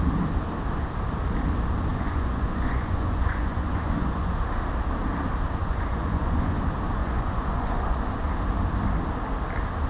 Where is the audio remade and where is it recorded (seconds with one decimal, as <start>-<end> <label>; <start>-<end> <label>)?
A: 0.0-1.9 recorded; 1.9-4.3 remade; 4.3-5.6 recorded; 5.6-6.6 remade; 6.6-7.0 recorded; 7.0-8.0 remade; 8.0-9.9 recorded